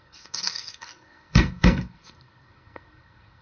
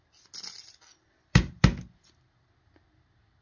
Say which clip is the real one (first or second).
second